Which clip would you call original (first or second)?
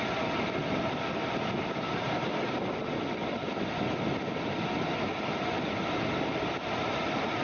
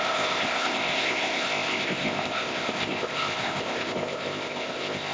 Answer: first